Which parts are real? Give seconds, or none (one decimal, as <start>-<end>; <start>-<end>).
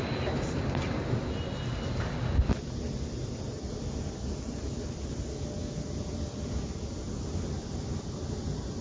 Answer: 0.0-8.8